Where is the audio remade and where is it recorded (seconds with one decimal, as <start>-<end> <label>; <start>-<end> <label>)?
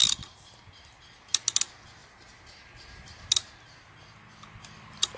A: 0.0-5.2 recorded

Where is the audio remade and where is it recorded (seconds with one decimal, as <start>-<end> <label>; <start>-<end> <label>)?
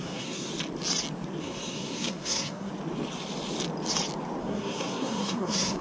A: 0.0-0.5 remade; 0.5-1.4 recorded; 1.4-2.7 remade; 2.7-4.4 recorded; 4.4-5.8 remade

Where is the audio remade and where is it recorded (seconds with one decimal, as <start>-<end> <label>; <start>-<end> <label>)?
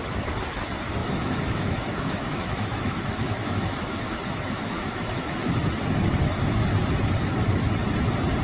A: 0.0-1.0 recorded; 1.0-5.5 remade; 5.5-8.4 recorded